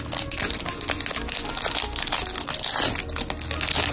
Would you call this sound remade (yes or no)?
no